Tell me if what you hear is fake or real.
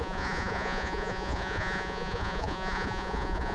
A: fake